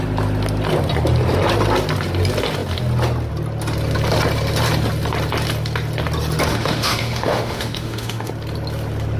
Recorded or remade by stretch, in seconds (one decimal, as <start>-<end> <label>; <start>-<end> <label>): 0.0-6.5 recorded; 6.5-8.3 remade; 8.3-9.2 recorded